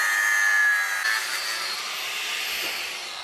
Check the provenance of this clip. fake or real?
real